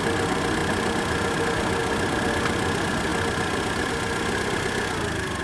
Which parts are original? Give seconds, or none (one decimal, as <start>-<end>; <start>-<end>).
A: 0.0-5.4